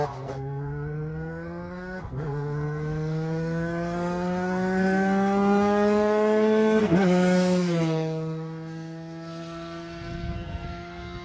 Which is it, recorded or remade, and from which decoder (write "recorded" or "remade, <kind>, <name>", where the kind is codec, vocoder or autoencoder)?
remade, codec, SNAC